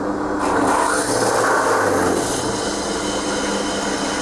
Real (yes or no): yes